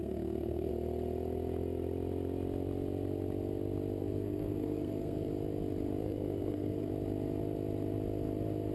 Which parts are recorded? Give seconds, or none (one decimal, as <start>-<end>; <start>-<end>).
0.7-4.0; 5.3-6.0; 6.9-8.7